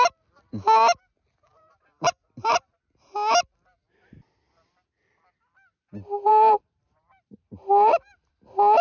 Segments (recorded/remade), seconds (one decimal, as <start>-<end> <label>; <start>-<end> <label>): 0.0-1.5 recorded; 1.5-2.8 remade; 2.8-6.3 recorded; 6.3-8.1 remade; 8.1-8.8 recorded